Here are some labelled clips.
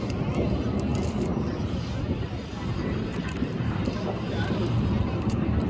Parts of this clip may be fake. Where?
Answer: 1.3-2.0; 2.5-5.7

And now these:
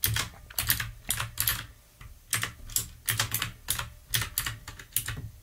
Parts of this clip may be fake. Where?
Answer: none

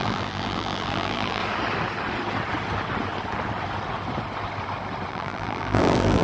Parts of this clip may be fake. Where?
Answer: 0.0-1.4; 5.1-6.2

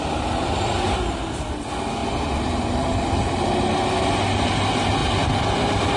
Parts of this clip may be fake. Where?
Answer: 2.0-2.6